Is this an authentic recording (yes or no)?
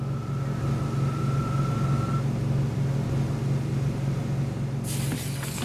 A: yes